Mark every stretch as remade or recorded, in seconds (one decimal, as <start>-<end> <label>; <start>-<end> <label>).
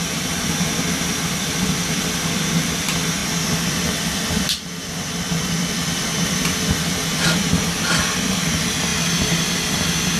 0.0-3.2 remade; 3.2-3.7 recorded; 3.7-8.9 remade; 8.9-10.2 recorded